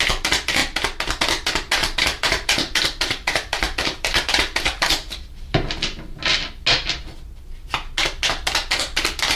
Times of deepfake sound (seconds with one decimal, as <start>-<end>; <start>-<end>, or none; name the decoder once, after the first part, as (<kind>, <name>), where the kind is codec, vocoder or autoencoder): 1.8-5.7 (vocoder, BigVGAN v2)